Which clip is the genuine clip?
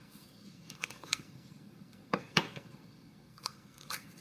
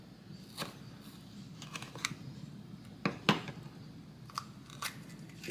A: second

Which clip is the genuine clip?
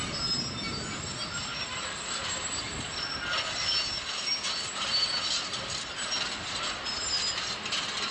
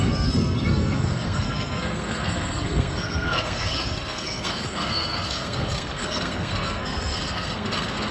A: first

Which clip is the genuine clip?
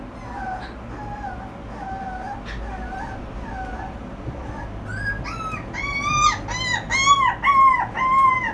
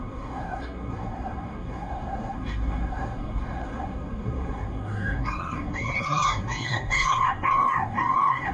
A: first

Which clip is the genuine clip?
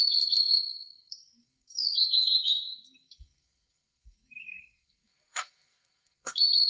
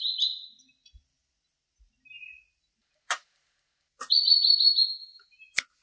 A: second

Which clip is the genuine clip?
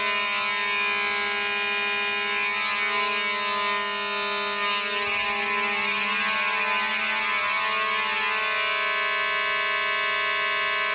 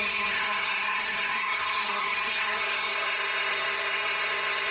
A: first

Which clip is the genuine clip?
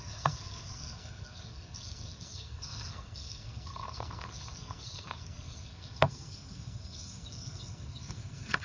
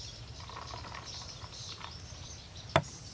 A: second